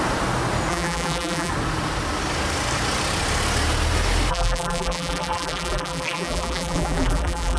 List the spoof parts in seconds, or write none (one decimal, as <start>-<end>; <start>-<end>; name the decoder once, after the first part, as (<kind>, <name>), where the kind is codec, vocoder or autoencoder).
0.7-1.5 (vocoder, BigVGAN v2); 4.3-7.6